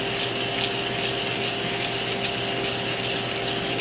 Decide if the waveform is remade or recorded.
recorded